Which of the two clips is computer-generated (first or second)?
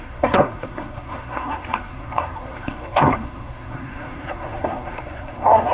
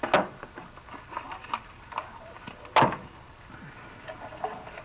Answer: first